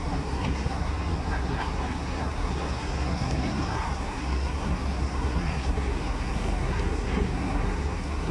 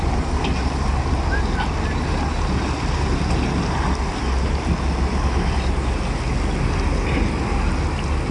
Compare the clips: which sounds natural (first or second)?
second